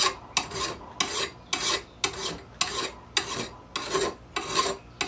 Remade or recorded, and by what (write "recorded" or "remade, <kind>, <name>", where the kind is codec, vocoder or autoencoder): recorded